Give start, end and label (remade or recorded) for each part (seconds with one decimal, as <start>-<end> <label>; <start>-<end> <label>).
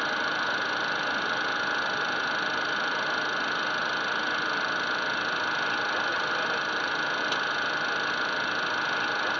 0.0-9.4 recorded